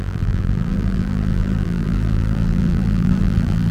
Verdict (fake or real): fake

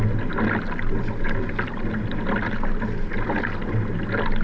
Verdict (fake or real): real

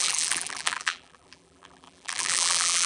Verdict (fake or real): fake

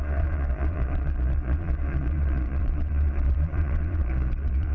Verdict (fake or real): fake